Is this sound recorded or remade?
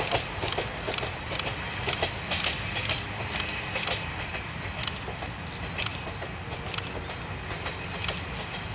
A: recorded